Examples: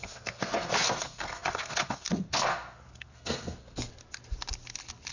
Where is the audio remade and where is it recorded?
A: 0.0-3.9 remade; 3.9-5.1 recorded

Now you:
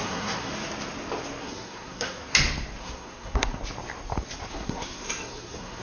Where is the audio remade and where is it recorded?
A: 0.0-0.5 remade; 0.5-1.4 recorded; 1.4-2.2 remade; 2.2-2.8 recorded; 2.8-3.6 remade; 3.6-4.5 recorded; 4.5-5.8 remade